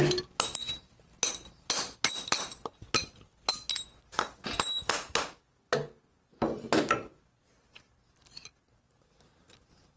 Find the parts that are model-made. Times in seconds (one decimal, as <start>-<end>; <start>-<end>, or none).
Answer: none